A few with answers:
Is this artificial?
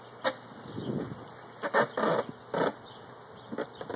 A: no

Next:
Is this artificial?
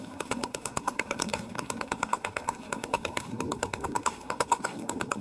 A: yes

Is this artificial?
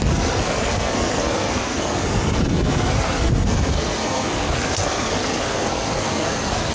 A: yes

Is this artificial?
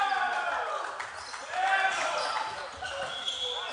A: no